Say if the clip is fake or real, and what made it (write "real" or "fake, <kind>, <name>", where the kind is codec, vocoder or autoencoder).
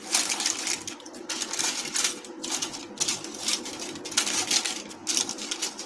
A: real